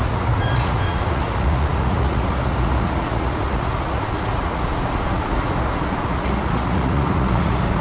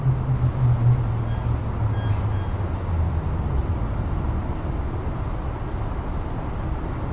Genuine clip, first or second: second